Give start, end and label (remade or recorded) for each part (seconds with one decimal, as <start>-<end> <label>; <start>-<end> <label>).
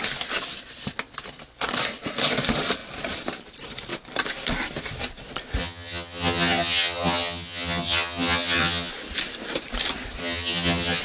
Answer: 0.0-5.6 recorded; 5.6-8.9 remade; 8.9-10.2 recorded; 10.2-11.0 remade